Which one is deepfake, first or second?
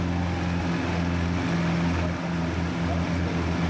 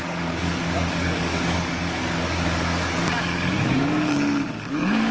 second